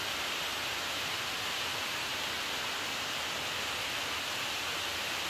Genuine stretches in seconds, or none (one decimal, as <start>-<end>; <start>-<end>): 0.0-5.3